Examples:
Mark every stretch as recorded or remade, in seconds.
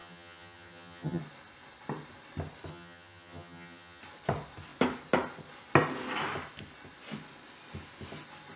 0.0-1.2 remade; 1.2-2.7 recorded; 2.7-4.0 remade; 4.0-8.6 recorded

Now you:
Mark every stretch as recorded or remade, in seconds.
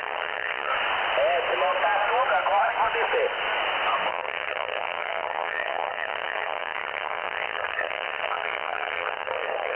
0.0-0.7 remade; 0.7-4.1 recorded; 4.1-9.8 remade